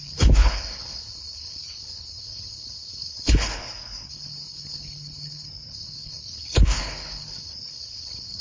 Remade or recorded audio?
remade